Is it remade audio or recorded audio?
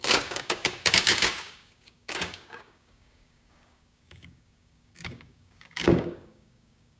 remade